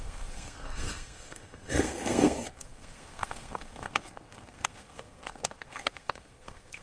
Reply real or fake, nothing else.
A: fake